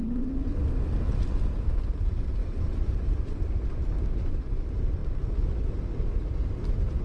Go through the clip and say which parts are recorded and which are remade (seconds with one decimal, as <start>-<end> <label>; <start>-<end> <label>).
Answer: 0.0-2.4 recorded; 2.4-4.5 remade; 4.5-7.0 recorded